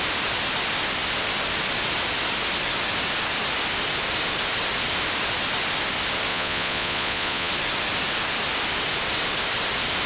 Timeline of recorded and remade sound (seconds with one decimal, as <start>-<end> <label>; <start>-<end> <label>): 0.0-6.3 recorded; 6.3-7.5 remade; 7.5-10.1 recorded